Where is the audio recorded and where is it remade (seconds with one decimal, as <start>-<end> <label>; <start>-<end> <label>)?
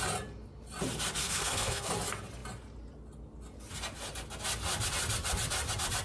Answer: 0.0-1.2 recorded; 1.2-1.9 remade; 1.9-6.0 recorded